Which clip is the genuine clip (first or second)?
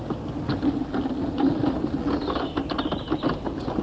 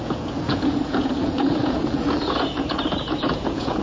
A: first